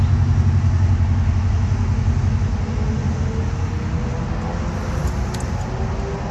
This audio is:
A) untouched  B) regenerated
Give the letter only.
A